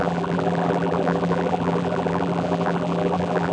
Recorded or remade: remade